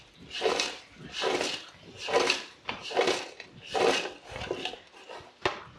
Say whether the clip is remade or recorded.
recorded